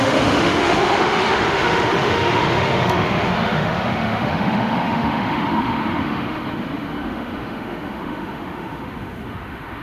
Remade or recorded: remade